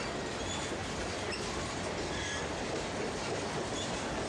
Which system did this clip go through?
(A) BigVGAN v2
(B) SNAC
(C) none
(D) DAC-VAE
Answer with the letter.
C